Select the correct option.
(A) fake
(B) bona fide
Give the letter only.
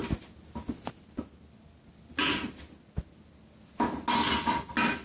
B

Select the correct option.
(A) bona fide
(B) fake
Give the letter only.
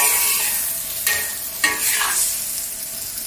A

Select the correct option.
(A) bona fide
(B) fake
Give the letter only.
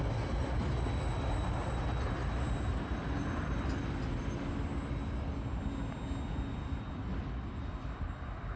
A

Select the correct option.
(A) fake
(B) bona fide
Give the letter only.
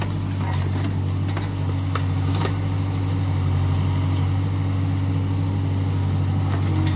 B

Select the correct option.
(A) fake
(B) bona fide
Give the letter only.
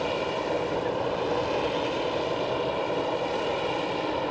B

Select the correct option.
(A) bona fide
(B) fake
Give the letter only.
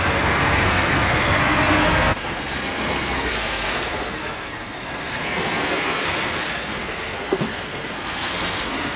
B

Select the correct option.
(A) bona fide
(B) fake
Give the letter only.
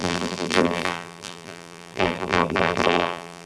B